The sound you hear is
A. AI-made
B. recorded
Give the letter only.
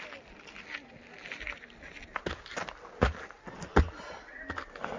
B